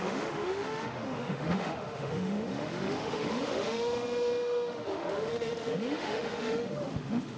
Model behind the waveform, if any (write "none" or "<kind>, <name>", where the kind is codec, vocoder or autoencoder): autoencoder, DAC-VAE